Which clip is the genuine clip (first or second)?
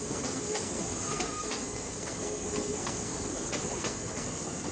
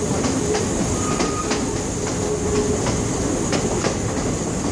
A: second